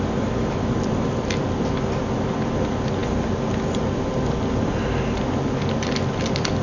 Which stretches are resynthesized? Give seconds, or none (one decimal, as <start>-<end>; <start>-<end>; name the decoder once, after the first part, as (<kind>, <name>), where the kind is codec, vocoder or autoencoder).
none